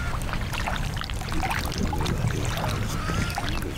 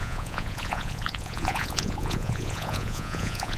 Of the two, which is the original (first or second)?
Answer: first